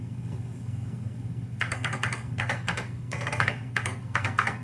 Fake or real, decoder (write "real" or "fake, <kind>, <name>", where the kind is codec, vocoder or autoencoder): fake, codec, SNAC